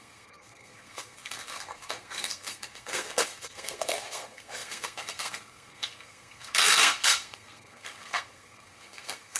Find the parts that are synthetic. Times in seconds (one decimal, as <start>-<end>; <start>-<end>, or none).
0.0-9.4